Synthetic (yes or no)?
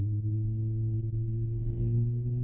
yes